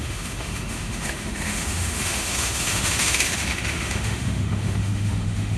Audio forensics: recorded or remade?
remade